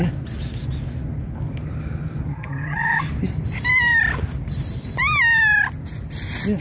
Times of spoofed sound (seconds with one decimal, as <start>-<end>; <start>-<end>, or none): 2.3-3.1